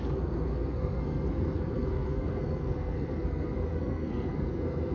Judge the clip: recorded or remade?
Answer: remade